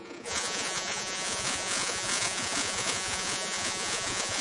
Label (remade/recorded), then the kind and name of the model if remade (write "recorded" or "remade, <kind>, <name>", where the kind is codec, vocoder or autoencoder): remade, vocoder, Vocos